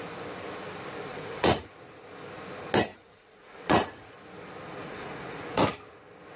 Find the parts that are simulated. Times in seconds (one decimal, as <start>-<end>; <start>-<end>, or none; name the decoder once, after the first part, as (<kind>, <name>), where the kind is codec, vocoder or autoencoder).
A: 1.1-1.7 (vocoder, Vocos); 2.9-4.1; 4.8-5.6